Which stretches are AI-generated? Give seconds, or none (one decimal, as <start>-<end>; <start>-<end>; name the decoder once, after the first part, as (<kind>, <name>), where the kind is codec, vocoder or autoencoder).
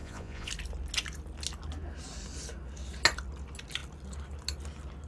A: 0.0-0.5 (vocoder, Vocos)